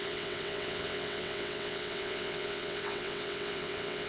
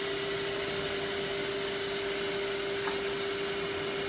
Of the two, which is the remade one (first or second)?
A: first